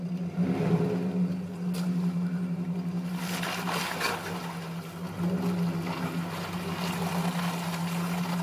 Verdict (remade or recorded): recorded